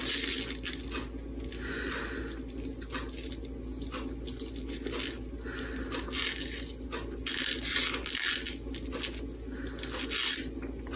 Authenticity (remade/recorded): recorded